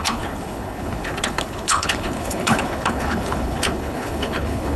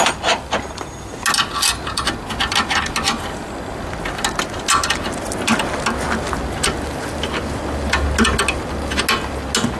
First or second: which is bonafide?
second